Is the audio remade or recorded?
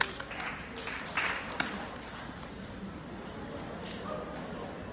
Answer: recorded